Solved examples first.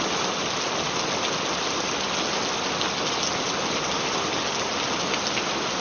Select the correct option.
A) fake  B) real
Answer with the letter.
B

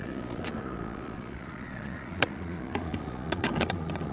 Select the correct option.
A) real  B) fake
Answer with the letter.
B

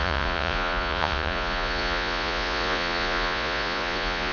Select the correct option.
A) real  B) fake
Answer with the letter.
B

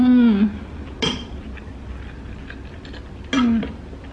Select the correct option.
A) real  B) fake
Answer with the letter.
A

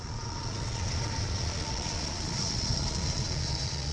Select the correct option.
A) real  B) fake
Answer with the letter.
B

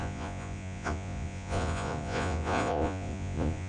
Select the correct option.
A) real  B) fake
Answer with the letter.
B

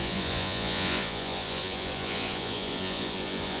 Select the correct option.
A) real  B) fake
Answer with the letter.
B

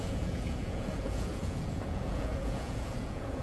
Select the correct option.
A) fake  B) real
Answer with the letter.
A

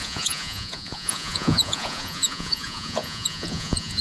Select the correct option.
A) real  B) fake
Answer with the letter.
B